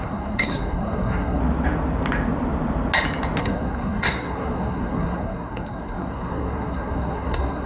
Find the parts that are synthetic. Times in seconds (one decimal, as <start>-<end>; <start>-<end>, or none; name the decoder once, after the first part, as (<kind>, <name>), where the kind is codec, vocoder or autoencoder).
0.0-1.4 (codec, SNAC); 3.4-7.7